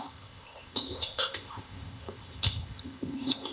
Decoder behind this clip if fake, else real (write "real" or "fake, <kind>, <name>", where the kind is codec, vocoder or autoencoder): fake, codec, ZipCodec